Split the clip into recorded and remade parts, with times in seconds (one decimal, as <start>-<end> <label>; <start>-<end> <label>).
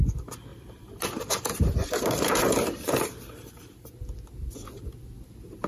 0.0-0.5 recorded; 0.5-3.9 remade; 3.9-5.7 recorded